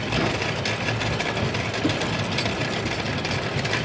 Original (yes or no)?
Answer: yes